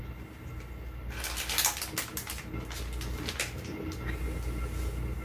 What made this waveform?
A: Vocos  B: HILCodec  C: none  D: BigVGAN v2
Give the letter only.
C